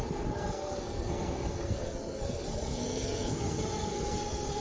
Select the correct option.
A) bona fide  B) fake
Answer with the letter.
B